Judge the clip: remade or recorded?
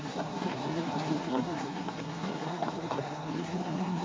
remade